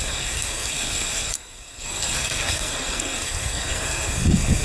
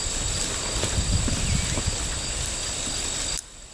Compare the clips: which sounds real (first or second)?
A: second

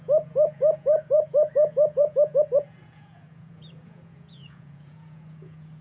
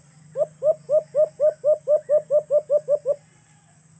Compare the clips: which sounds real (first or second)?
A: second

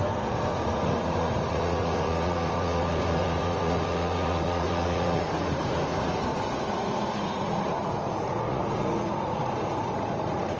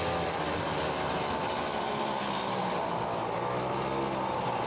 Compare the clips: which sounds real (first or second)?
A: second